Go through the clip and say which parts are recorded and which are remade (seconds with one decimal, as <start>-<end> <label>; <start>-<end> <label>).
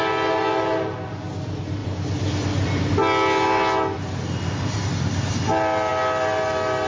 0.0-6.9 recorded